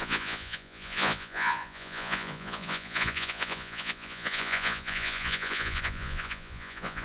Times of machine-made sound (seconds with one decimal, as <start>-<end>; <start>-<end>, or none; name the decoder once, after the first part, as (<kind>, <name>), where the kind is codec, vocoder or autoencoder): 0.0-7.0 (vocoder, Vocos)